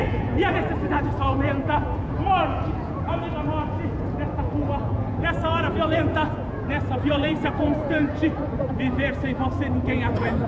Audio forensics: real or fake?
fake